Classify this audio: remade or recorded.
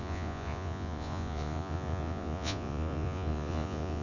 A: remade